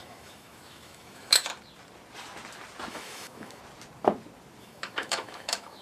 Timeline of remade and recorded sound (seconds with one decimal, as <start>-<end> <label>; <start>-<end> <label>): 0.0-1.5 remade; 1.5-2.9 recorded; 2.9-3.6 remade; 3.6-4.6 recorded; 4.6-5.8 remade